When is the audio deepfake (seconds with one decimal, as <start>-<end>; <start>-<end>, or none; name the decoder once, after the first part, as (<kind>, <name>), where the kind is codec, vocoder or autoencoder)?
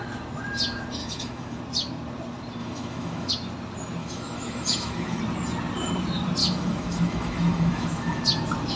1.0-1.6 (autoencoder, DAC-VAE); 2.6-3.3; 4.0-5.2; 6.4-8.2